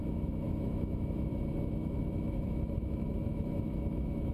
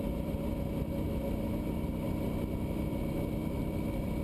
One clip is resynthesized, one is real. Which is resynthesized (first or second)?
first